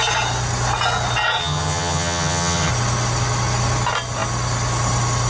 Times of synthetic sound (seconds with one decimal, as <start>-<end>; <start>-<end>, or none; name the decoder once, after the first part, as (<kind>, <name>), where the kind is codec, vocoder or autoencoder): 1.4-2.7 (vocoder, HiFi-GAN)